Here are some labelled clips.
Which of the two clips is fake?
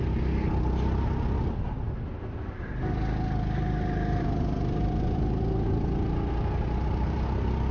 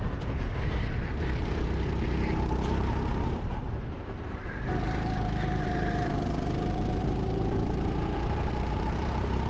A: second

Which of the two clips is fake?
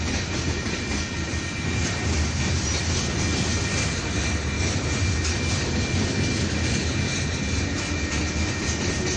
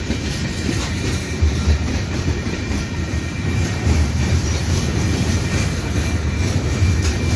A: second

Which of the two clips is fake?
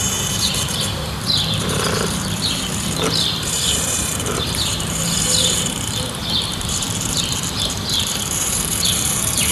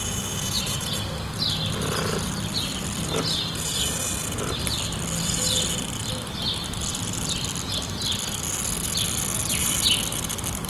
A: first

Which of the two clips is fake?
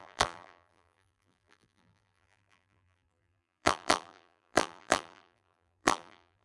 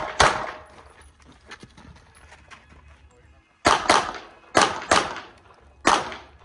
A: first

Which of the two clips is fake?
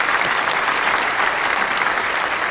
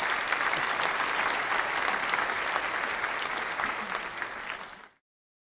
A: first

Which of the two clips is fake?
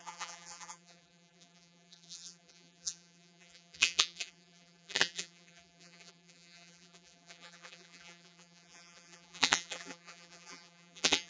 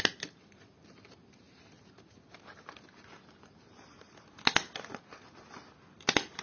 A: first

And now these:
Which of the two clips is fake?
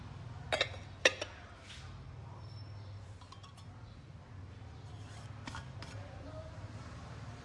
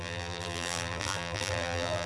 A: second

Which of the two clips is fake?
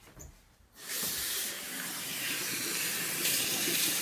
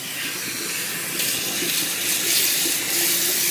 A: first